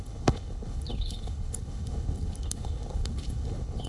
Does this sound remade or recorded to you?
remade